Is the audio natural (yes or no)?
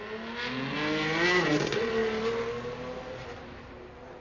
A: yes